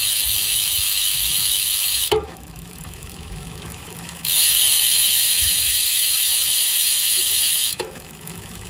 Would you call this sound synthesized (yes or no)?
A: yes